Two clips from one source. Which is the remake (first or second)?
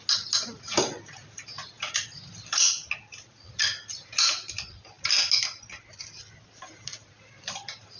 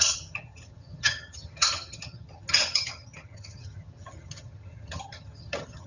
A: second